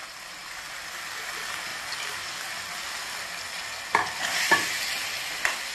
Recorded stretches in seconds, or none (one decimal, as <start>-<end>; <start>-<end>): 0.0-5.7